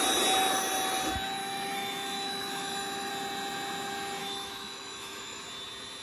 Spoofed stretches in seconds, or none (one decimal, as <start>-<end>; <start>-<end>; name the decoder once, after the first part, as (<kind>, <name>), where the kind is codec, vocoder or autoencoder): 1.4-3.1 (autoencoder, DAC-VAE); 4.2-5.4

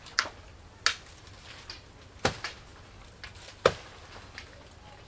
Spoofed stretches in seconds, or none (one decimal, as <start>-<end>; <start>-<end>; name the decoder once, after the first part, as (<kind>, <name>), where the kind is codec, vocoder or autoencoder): none